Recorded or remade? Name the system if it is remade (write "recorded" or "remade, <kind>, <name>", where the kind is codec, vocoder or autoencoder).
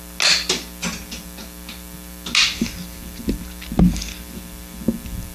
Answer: recorded